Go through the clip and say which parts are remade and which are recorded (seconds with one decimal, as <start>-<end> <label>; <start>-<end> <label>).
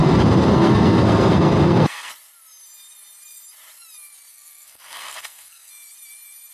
0.0-2.1 remade; 2.1-4.3 recorded; 4.3-5.7 remade; 5.7-6.5 recorded